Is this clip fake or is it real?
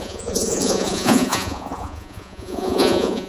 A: fake